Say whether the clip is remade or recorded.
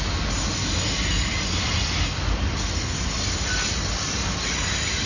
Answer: recorded